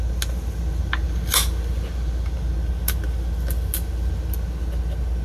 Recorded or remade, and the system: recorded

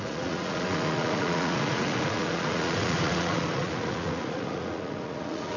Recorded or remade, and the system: remade, vocoder, Vocos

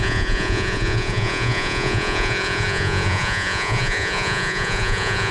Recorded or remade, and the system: remade, vocoder, Vocos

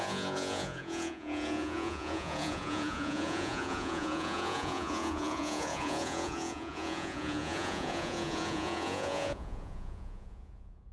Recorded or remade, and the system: remade, vocoder, Vocos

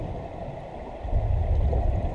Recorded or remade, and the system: recorded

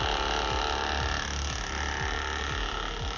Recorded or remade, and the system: recorded